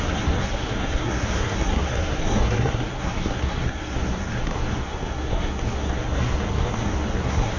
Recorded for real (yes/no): no